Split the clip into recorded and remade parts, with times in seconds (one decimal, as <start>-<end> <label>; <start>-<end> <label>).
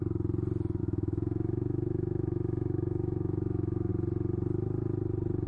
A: 0.0-0.8 recorded; 0.8-3.9 remade; 3.9-5.5 recorded